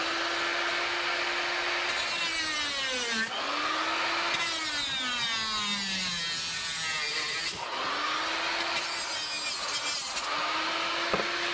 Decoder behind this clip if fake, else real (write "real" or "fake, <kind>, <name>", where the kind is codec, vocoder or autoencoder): real